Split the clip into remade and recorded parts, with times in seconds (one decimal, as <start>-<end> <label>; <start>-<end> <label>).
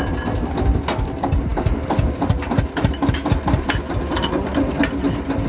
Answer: 0.0-5.5 recorded